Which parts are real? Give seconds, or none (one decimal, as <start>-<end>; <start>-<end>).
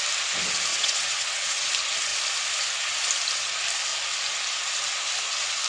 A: 0.0-0.7; 1.7-5.7